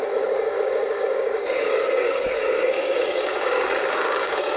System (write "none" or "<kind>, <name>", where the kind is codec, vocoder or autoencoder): codec, DAC